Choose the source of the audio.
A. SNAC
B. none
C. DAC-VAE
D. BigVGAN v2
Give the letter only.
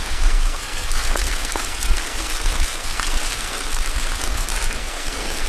A